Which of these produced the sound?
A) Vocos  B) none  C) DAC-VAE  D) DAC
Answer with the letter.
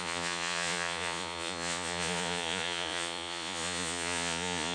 A